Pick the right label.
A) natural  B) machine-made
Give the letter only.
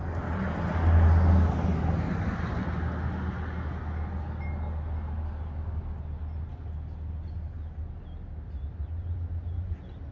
A